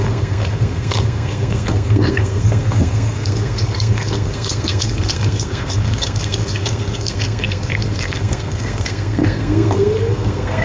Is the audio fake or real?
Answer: fake